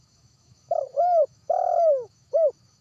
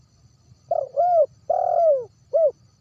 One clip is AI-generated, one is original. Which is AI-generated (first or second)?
first